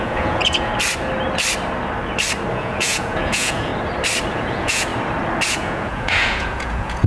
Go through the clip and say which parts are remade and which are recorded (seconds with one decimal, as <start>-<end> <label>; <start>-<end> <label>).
0.0-0.7 remade; 0.7-2.5 recorded; 2.5-3.7 remade; 3.7-4.3 recorded; 4.3-4.9 remade; 4.9-5.5 recorded; 5.5-7.1 remade